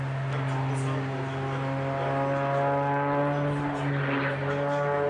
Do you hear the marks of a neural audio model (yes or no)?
no